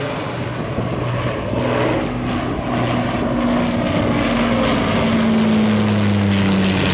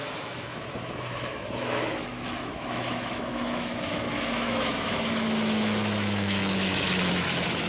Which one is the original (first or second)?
first